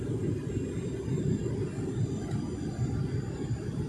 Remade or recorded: recorded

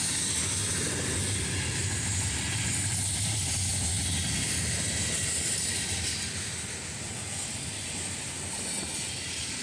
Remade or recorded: recorded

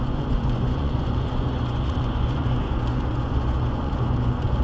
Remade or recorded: remade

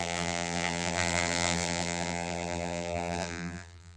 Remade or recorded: remade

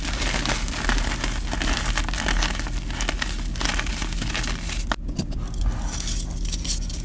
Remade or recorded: recorded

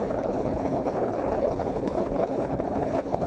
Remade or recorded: remade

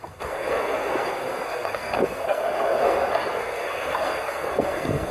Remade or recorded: remade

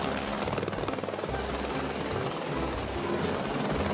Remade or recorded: recorded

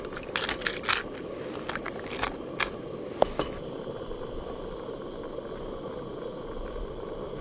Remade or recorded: recorded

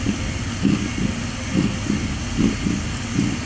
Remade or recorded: recorded